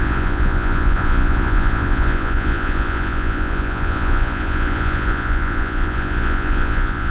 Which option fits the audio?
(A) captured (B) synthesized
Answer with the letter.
B